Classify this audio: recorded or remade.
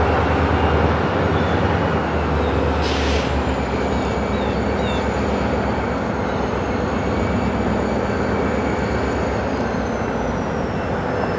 recorded